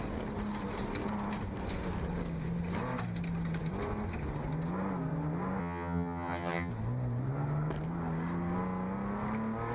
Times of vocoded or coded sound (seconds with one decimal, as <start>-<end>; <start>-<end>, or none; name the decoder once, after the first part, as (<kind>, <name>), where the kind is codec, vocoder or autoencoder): 5.6-6.7 (vocoder, HiFi-GAN)